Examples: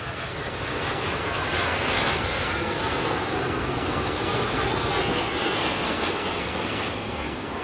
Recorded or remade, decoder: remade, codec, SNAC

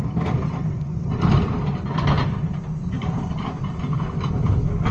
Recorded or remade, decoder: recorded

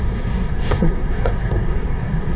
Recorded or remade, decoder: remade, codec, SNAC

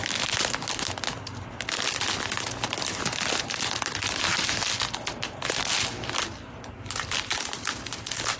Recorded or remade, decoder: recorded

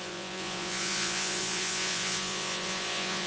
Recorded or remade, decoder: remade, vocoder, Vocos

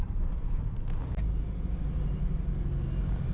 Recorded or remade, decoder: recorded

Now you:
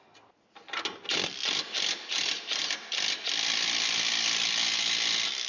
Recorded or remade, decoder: recorded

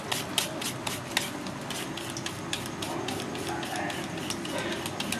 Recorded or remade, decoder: recorded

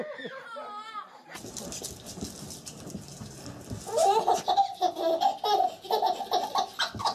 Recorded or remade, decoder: recorded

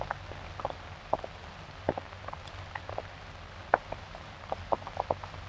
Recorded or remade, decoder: recorded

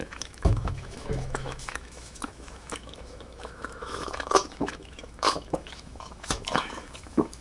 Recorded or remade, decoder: remade, autoencoder, DAC-VAE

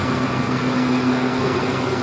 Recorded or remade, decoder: remade, codec, SNAC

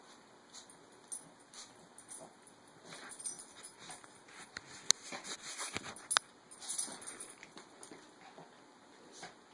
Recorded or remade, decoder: recorded